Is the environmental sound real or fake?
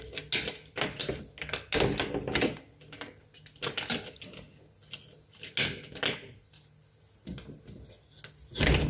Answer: real